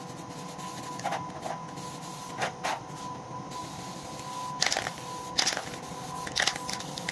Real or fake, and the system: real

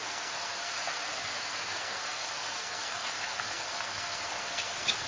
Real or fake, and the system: fake, codec, SNAC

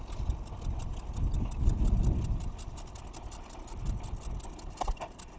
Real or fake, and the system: real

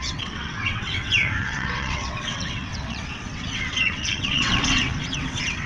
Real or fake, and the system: fake, vocoder, WaveNeXt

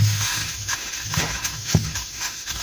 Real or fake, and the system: fake, autoencoder, DAC-VAE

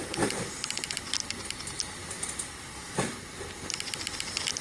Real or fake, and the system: real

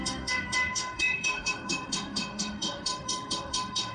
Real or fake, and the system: fake, autoencoder, DAC-VAE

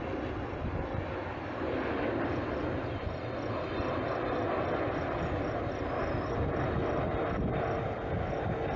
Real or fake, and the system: real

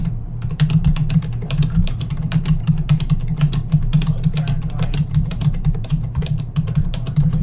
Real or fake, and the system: fake, vocoder, BigVGAN v2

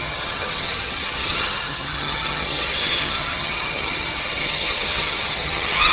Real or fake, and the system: fake, vocoder, HiFi-GAN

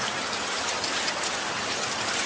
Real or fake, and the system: real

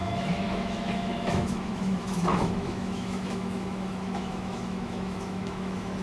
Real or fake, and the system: fake, autoencoder, DAC-VAE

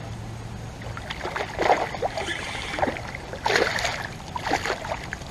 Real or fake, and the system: real